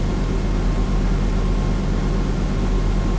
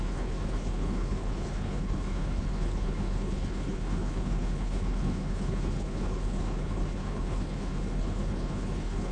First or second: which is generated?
second